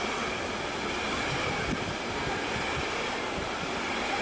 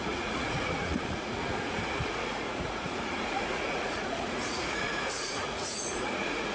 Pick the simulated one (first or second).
second